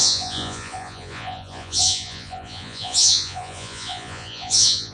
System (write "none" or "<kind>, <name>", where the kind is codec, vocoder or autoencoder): vocoder, Vocos